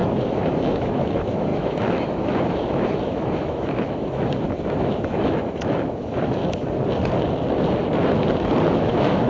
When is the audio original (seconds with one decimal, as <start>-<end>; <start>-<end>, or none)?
6.4-8.7